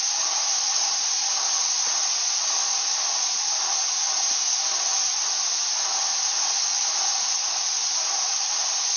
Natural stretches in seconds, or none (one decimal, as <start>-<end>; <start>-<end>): 0.0-7.1; 8.4-9.0